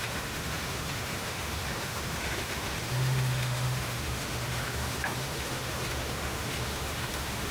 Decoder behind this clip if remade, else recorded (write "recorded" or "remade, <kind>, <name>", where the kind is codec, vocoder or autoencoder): remade, autoencoder, DAC-VAE